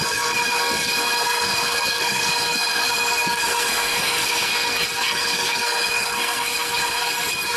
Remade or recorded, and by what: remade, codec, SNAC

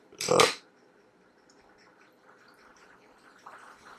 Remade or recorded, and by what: remade, vocoder, BigVGAN v2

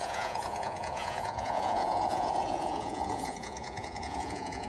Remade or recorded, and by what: remade, vocoder, Vocos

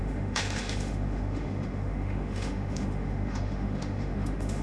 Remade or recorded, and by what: remade, autoencoder, DAC-VAE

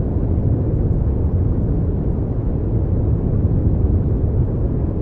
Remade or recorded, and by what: recorded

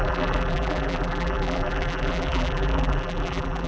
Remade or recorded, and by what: remade, vocoder, BigVGAN v2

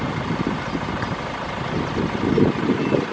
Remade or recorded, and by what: recorded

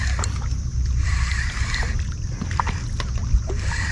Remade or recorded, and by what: recorded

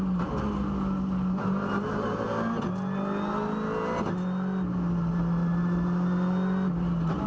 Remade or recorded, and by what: recorded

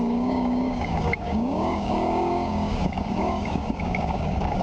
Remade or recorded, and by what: remade, codec, DAC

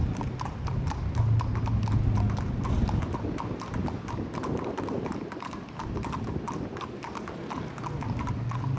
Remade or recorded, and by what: recorded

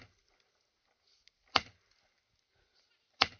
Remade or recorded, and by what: recorded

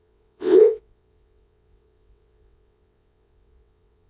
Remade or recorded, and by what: remade, vocoder, WaveNeXt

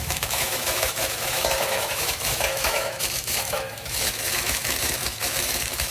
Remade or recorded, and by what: remade, autoencoder, DAC-VAE